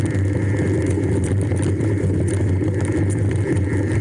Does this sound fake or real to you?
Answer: real